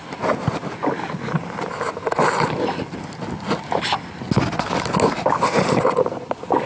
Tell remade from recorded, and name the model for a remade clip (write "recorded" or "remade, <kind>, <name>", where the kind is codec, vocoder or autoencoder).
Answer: recorded